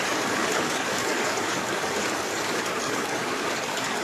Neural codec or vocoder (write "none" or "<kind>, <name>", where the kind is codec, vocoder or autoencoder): codec, DAC